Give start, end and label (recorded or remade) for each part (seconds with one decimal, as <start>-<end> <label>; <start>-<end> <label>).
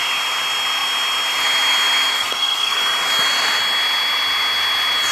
0.0-2.1 recorded; 2.1-2.8 remade; 2.8-5.1 recorded